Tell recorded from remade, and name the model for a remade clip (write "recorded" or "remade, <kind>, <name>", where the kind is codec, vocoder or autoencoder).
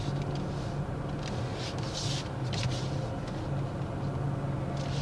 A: recorded